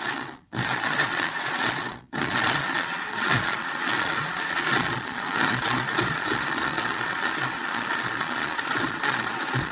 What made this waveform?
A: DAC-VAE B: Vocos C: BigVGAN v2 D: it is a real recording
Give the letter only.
B